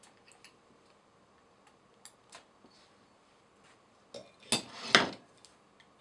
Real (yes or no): yes